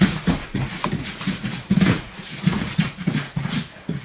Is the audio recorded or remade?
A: remade